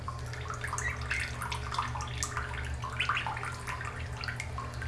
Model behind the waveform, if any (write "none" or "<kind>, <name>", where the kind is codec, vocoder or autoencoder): none